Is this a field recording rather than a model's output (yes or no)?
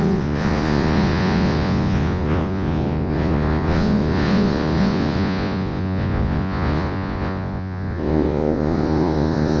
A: no